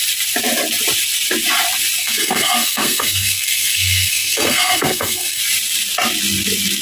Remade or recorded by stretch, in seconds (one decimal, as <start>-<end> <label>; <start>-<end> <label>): 0.0-2.0 recorded; 2.0-5.4 remade; 5.4-6.8 recorded